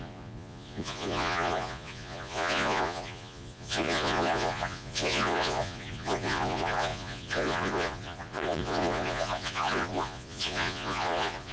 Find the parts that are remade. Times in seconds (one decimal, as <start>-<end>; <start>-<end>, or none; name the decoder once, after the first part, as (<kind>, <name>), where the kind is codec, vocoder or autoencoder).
0.0-11.5 (vocoder, Vocos)